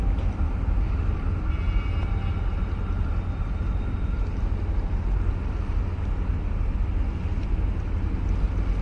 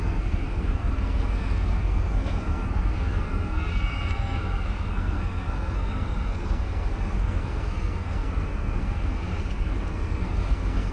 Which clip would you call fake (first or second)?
second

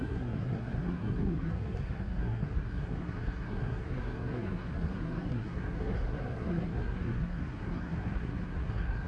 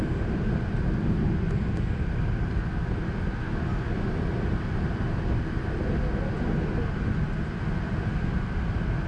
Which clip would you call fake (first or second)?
first